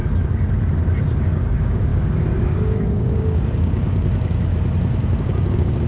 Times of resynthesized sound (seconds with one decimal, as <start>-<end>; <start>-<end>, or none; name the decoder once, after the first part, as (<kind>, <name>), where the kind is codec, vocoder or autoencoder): 1.2-1.9 (codec, DAC); 2.4-4.5; 5.2-5.9